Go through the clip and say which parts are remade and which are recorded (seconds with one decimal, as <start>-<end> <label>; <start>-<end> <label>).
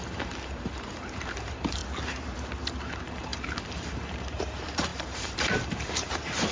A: 0.0-1.8 remade; 1.8-2.8 recorded; 2.8-6.5 remade